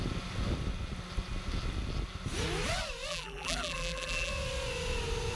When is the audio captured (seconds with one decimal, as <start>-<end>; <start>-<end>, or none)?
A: 0.0-3.1; 4.3-5.4